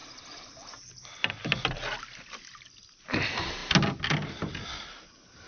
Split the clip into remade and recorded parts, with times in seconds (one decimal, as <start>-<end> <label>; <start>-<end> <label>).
0.0-5.5 recorded